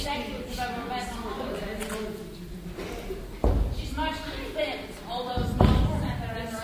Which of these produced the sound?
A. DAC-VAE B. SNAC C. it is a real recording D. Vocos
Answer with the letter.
C